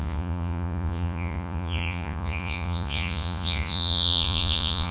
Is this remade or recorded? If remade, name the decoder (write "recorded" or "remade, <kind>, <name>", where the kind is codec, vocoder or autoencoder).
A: remade, vocoder, Vocos